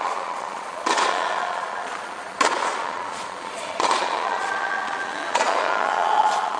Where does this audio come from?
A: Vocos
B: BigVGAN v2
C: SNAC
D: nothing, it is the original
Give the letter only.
A